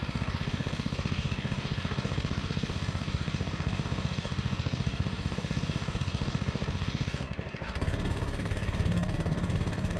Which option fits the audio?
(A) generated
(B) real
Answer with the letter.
A